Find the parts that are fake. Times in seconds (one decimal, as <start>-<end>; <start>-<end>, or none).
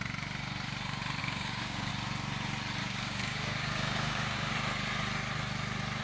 1.2-1.9; 2.8-4.5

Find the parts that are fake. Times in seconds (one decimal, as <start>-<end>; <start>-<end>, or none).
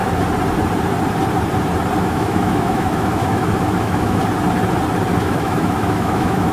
2.0-4.2; 5.2-6.5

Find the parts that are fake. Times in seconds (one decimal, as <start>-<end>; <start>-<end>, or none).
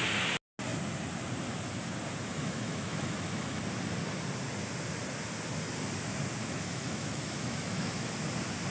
2.3-3.6; 6.4-8.1